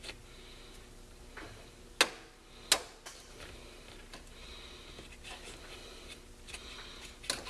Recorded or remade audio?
recorded